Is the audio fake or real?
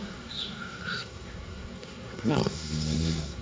fake